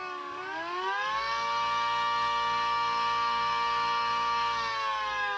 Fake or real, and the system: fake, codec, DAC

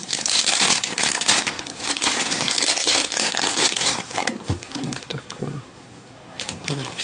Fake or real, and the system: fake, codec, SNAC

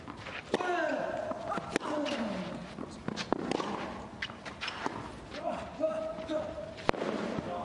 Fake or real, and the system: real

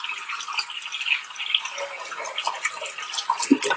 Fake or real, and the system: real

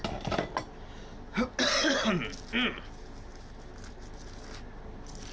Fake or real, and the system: real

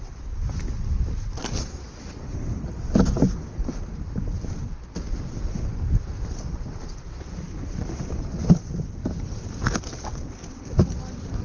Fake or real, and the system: real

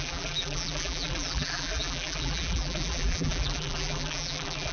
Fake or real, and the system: fake, vocoder, BigVGAN v2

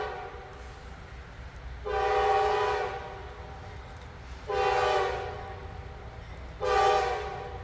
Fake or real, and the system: real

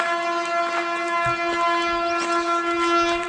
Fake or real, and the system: real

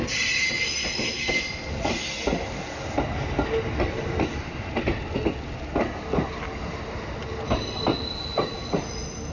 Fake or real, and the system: real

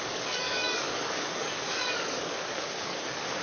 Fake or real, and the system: fake, codec, DAC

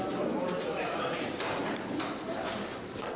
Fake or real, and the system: fake, vocoder, BigVGAN v2